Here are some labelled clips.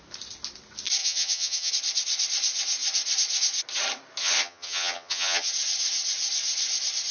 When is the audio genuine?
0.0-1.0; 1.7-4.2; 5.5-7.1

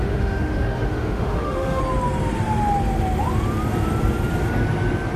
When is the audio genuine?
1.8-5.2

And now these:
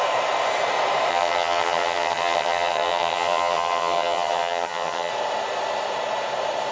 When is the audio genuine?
0.0-1.1; 5.1-6.7